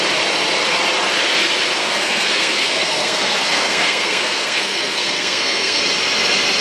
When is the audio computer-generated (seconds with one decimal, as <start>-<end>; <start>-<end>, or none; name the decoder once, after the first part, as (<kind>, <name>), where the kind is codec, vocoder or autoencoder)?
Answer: 1.8-5.8 (codec, SNAC)